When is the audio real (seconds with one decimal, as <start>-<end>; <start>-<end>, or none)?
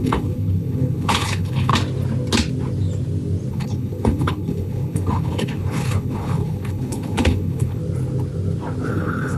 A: 1.7-3.5; 7.8-8.9